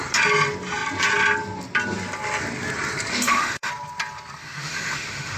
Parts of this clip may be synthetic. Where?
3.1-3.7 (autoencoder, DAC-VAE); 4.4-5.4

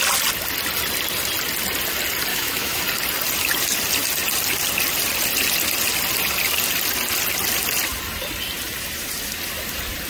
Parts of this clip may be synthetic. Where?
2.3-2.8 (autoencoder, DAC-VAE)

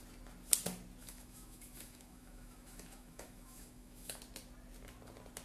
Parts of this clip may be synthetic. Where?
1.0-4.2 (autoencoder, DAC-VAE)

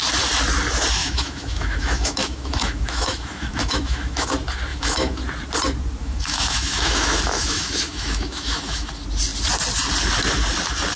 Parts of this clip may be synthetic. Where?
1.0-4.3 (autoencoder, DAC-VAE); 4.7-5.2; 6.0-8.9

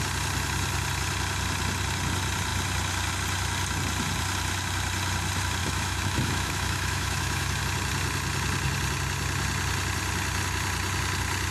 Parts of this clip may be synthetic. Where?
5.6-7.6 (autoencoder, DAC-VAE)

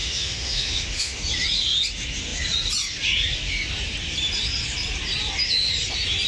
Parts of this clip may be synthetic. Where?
0.0-1.2 (autoencoder, DAC-VAE)

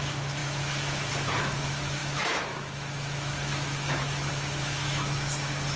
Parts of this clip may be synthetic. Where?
0.0-5.8 (autoencoder, DAC-VAE)

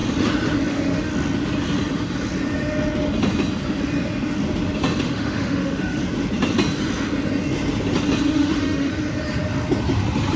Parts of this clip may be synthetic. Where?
0.7-1.1 (autoencoder, DAC-VAE); 5.0-6.0; 8.3-8.9